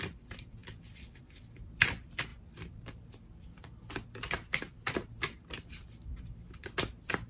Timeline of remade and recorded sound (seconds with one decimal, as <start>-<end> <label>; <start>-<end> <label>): 0.0-7.3 remade